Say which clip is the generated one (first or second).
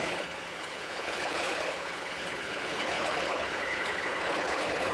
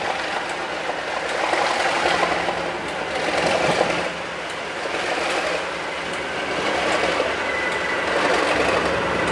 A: first